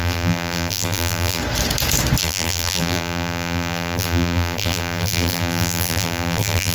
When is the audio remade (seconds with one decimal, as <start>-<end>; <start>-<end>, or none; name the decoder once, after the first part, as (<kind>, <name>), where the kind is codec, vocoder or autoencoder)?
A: 0.0-1.4 (vocoder, BigVGAN v2); 2.2-6.7